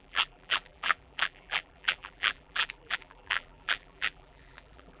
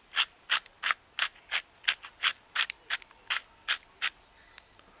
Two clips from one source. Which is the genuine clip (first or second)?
second